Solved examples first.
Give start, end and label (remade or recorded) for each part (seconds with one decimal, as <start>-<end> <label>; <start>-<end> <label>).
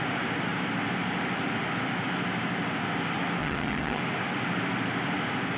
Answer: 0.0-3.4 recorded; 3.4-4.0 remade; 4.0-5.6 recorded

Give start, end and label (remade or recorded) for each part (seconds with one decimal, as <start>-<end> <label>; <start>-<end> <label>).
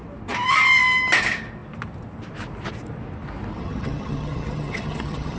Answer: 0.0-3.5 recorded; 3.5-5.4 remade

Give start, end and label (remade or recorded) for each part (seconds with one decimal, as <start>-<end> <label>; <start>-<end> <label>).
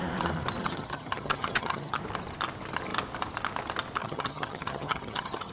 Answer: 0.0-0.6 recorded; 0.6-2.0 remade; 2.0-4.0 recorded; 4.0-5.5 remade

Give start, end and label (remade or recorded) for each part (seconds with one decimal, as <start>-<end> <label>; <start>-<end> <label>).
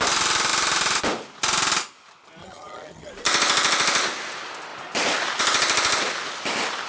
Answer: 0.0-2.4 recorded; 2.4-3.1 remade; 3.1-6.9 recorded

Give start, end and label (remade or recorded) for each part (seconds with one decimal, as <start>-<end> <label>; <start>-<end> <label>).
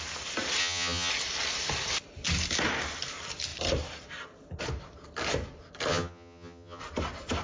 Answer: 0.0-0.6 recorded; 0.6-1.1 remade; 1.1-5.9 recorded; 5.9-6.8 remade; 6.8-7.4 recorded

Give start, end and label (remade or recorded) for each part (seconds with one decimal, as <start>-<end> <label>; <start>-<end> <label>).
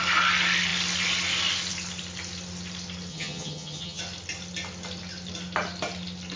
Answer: 0.0-3.1 recorded; 3.1-4.0 remade; 4.0-6.4 recorded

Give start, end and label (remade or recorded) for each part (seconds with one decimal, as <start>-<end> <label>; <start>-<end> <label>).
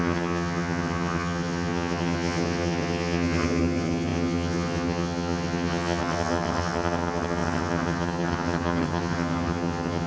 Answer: 0.0-10.1 remade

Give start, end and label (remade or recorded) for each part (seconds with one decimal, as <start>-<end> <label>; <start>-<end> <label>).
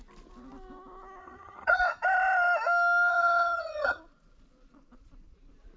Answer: 0.0-1.2 recorded; 1.2-1.8 remade; 1.8-3.1 recorded; 3.1-4.0 remade; 4.0-5.8 recorded